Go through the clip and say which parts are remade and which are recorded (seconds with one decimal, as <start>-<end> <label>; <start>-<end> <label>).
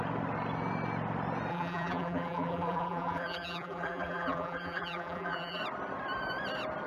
0.0-1.5 recorded; 1.5-5.6 remade; 5.6-6.9 recorded